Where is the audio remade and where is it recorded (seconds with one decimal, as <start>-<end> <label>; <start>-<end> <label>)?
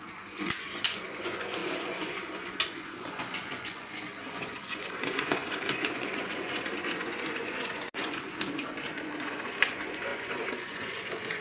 0.0-11.4 remade